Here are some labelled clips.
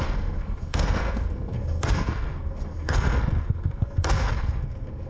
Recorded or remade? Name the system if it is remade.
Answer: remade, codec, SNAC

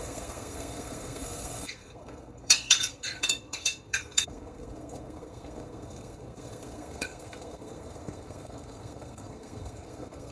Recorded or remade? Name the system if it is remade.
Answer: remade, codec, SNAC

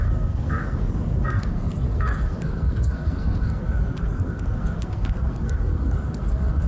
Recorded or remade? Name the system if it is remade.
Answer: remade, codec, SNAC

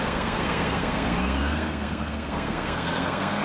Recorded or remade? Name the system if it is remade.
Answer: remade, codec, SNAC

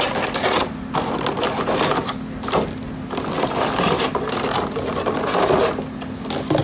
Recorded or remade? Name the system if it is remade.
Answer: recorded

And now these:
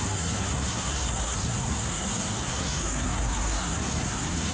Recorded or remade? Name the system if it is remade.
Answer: remade, codec, SNAC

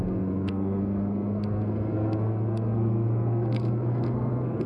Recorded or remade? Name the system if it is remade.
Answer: remade, codec, SNAC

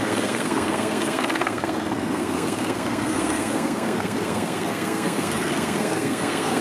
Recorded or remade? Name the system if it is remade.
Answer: remade, codec, SNAC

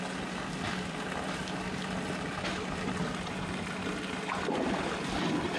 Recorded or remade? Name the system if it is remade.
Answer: recorded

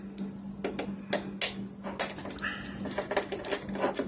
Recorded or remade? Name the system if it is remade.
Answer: recorded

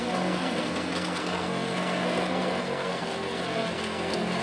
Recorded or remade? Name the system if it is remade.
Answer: remade, codec, SNAC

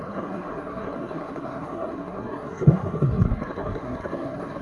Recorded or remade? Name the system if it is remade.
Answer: remade, codec, SNAC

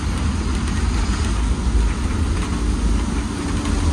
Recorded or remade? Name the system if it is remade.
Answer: recorded